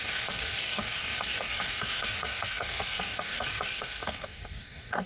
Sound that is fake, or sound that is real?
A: fake